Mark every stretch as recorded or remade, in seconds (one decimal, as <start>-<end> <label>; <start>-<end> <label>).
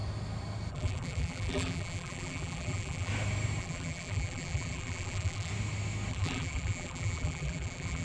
0.0-0.7 recorded; 0.7-3.1 remade; 3.1-3.6 recorded; 3.6-5.5 remade; 5.5-6.1 recorded; 6.1-8.0 remade